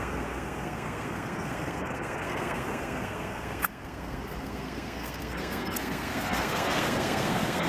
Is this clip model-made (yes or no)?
yes